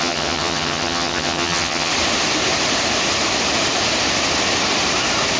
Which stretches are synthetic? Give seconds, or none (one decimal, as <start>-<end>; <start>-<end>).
0.0-1.9